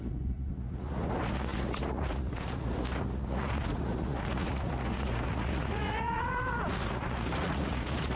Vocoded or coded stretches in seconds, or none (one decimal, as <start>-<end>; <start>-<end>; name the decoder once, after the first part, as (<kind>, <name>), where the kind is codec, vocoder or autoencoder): 0.0-8.2 (vocoder, Vocos)